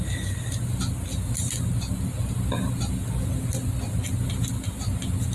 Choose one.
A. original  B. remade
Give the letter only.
A